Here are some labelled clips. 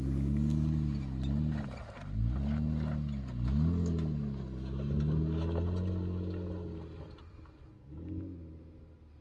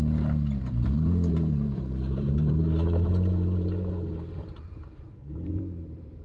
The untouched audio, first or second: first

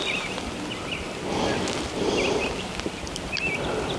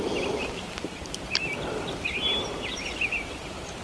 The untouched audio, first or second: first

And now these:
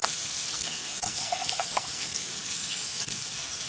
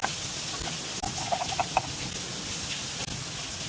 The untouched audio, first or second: second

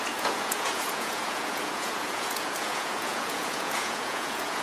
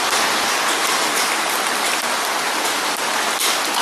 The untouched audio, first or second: second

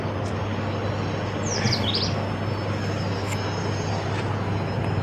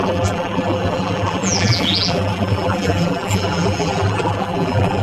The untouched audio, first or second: first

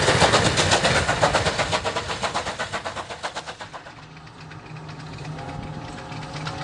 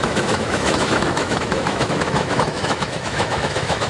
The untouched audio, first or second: first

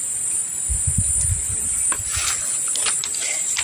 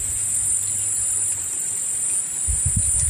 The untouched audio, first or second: second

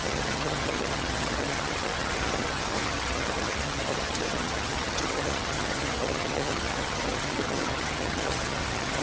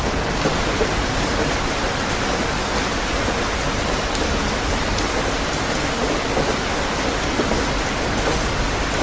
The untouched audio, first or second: second